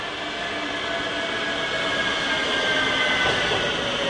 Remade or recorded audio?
recorded